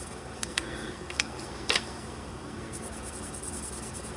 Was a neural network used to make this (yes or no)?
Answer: yes